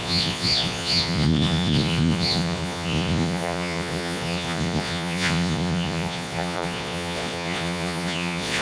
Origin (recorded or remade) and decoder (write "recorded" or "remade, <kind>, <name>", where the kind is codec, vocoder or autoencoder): remade, vocoder, Vocos